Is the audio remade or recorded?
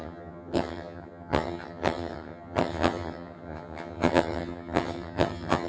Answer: remade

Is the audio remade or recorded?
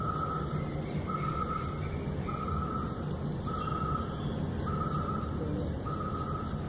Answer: recorded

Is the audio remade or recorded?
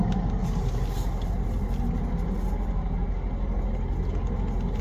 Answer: recorded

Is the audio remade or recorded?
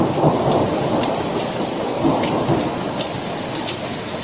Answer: remade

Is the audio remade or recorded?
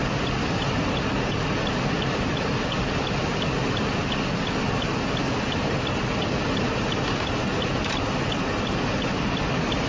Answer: recorded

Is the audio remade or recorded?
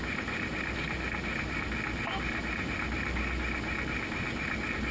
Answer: recorded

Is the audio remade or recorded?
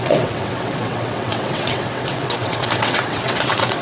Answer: remade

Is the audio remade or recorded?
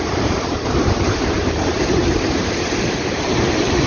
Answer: remade